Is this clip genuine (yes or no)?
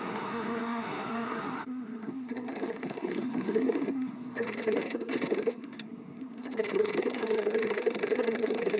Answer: no